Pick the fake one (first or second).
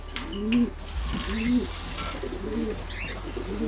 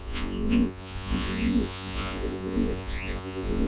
second